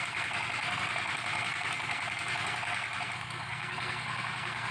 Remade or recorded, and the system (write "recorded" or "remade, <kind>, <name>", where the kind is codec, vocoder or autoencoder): remade, codec, SNAC